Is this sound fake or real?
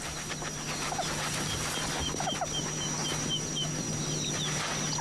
real